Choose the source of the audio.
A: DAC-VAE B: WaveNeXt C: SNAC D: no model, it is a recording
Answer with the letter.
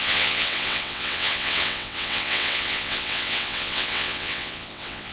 B